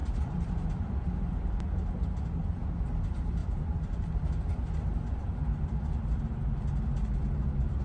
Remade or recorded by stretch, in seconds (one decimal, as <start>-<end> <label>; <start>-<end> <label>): 0.0-1.1 remade; 1.1-3.4 recorded; 3.4-6.2 remade; 6.2-7.8 recorded